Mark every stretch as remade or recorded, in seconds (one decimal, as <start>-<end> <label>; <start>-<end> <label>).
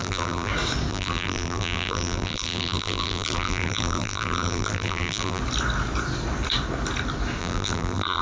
0.0-0.5 remade; 0.5-0.9 recorded; 0.9-5.4 remade; 5.4-7.4 recorded; 7.4-8.2 remade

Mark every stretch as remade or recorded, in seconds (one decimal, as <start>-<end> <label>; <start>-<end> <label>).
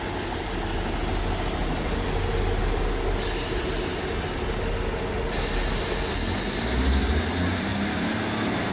0.0-8.7 recorded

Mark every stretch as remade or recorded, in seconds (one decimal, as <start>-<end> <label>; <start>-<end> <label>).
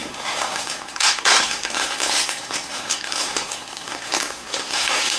0.0-5.2 remade